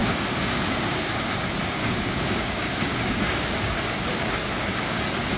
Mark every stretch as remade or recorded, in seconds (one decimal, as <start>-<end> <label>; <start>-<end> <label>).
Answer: 0.0-1.3 remade; 1.3-1.8 recorded; 1.8-5.0 remade; 5.0-5.4 recorded